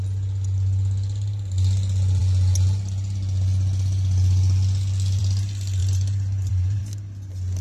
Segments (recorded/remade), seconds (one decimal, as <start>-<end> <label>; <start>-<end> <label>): 0.0-5.8 recorded; 5.8-6.8 remade; 6.8-7.6 recorded